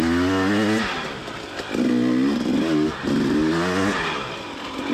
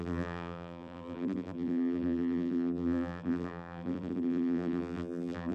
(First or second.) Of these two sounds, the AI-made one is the second